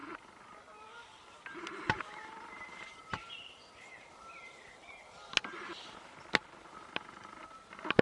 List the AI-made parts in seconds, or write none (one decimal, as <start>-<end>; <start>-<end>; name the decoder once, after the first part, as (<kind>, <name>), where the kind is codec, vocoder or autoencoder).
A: 0.0-4.7 (vocoder, BigVGAN v2)